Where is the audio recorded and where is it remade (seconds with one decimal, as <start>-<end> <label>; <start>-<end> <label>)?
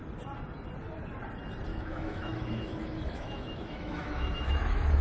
0.0-1.7 recorded; 1.7-5.0 remade